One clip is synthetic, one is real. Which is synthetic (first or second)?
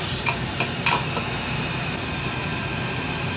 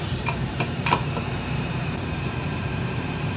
second